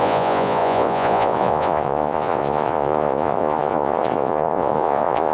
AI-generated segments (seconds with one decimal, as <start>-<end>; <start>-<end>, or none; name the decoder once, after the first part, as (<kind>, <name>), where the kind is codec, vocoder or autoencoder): 0.0-5.3 (vocoder, Vocos)